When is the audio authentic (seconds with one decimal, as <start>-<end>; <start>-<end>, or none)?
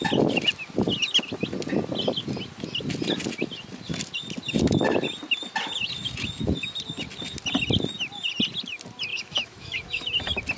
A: 0.0-9.1; 10.2-10.6